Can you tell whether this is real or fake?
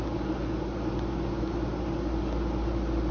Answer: real